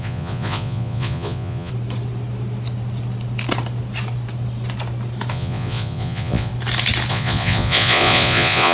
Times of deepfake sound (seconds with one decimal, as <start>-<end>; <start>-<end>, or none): 0.0-1.7; 5.3-6.5; 7.1-8.7